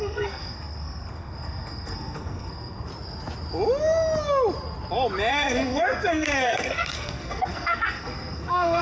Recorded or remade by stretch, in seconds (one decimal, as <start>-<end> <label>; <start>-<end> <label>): 0.0-2.9 remade; 2.9-5.3 recorded; 5.3-8.8 remade